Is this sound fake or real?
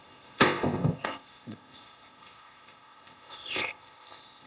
fake